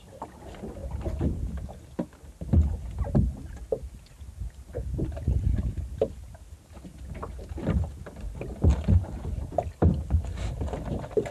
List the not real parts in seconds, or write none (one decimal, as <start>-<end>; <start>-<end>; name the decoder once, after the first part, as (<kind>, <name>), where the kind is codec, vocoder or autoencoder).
8.7-11.3 (vocoder, BigVGAN v2)